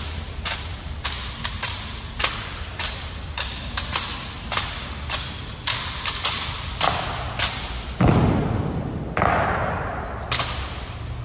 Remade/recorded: recorded